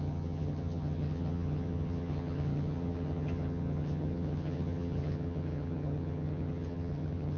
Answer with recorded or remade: remade